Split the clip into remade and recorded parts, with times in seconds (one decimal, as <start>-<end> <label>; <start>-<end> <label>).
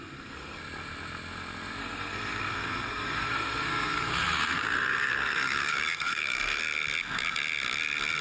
0.0-0.6 remade; 0.6-1.8 recorded; 1.8-6.6 remade; 6.6-8.2 recorded